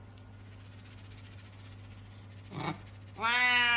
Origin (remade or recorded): recorded